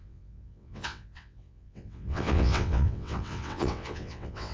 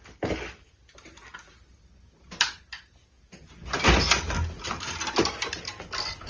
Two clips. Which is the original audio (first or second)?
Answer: second